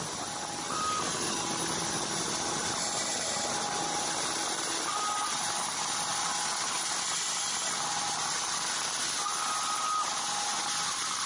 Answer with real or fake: real